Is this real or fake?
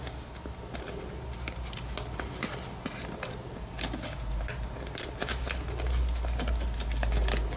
real